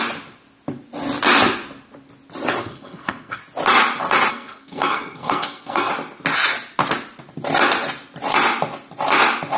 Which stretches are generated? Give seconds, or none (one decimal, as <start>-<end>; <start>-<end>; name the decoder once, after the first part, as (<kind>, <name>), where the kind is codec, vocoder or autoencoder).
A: 2.6-3.4 (codec, SNAC); 4.3-5.9